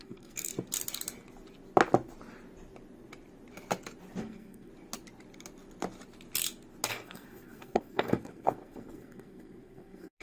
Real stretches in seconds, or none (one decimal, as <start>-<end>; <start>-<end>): 0.5-4.2; 4.7-6.9